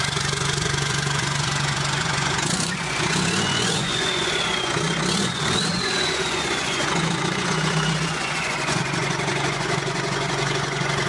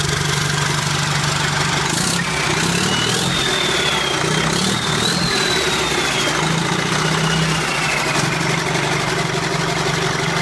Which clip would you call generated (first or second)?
first